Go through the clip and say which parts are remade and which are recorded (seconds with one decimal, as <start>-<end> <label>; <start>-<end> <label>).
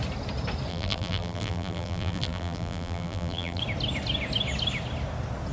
0.0-0.7 recorded; 0.7-3.6 remade; 3.6-5.5 recorded